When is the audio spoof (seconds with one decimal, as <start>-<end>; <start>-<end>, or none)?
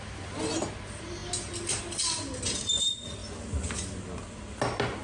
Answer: none